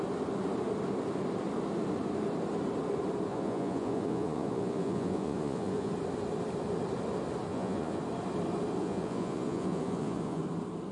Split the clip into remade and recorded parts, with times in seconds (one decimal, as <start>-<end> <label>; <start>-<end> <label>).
0.0-3.3 recorded; 3.3-5.9 remade; 5.9-7.5 recorded; 7.5-8.0 remade; 8.0-8.8 recorded; 8.8-10.4 remade; 10.4-10.9 recorded